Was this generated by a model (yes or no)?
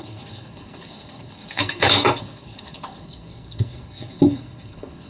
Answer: yes